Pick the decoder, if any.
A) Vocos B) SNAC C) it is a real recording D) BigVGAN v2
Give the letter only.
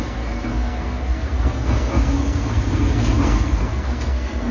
B